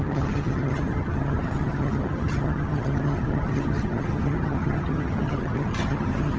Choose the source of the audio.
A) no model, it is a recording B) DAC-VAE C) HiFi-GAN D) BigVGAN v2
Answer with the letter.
C